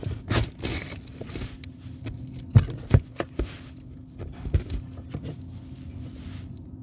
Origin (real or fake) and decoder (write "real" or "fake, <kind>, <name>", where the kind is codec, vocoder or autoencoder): real